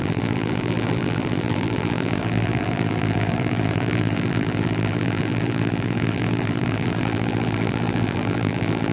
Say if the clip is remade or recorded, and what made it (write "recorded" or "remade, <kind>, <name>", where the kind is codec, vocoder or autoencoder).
remade, vocoder, BigVGAN v2